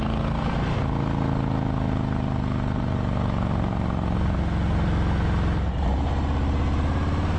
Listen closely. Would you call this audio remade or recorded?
recorded